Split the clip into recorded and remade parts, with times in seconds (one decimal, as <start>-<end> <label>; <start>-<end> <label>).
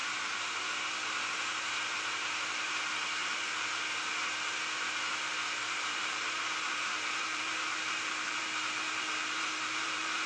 0.0-0.6 remade; 0.6-3.2 recorded; 3.2-3.8 remade; 3.8-5.6 recorded; 5.6-10.3 remade